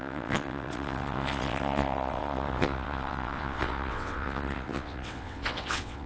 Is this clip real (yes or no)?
no